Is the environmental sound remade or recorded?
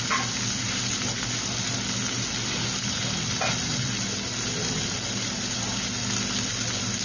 recorded